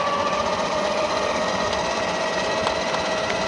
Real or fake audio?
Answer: fake